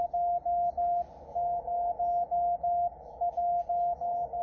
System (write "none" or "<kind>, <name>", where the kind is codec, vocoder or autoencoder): none